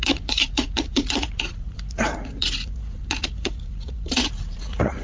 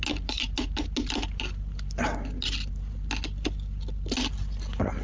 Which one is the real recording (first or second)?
second